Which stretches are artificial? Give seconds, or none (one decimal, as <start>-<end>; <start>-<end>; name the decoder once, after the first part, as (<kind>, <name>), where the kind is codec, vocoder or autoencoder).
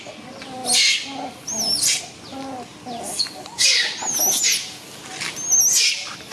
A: none